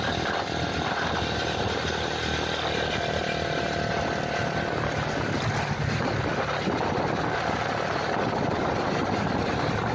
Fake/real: real